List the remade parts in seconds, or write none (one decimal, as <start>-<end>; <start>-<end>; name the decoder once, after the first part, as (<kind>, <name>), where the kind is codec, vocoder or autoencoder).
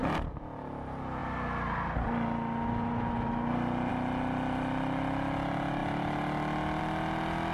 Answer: none